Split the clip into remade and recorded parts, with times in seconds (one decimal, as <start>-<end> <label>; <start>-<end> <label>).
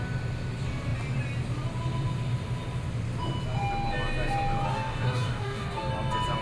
0.0-4.7 recorded; 4.7-5.9 remade; 5.9-6.4 recorded